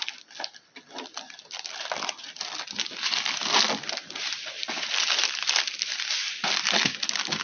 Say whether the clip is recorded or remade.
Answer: recorded